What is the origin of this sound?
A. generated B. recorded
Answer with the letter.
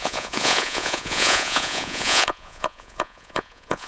A